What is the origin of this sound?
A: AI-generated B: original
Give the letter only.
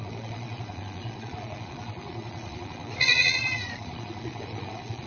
A